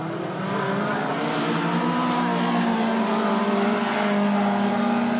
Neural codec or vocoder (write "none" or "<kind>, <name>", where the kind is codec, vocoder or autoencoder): none